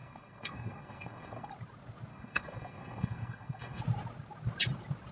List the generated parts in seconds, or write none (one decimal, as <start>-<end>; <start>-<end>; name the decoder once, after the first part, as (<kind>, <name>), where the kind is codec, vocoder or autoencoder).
0.0-1.5 (codec, SNAC); 2.1-3.8